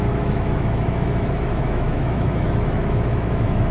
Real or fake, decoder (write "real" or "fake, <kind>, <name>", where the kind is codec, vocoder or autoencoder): fake, autoencoder, DAC-VAE